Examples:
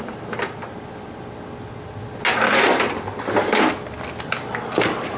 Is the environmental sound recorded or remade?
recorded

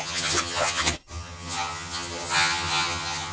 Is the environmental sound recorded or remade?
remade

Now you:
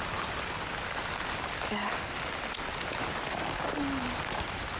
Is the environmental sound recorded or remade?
recorded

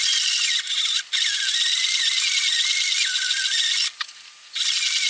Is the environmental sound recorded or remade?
recorded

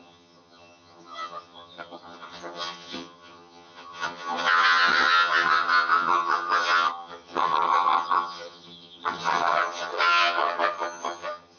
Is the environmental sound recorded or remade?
remade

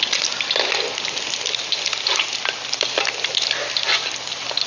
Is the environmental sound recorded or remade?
recorded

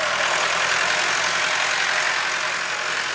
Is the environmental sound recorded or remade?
recorded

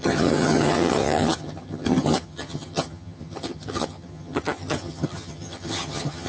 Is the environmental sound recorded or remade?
remade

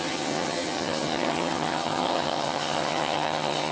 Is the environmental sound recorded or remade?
remade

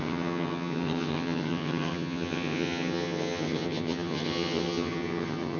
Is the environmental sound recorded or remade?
remade